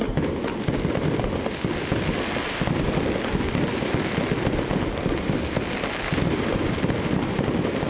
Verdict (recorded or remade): recorded